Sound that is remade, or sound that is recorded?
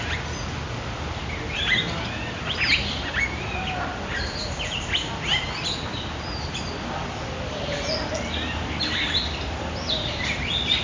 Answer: recorded